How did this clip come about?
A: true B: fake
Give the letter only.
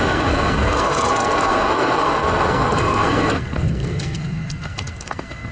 B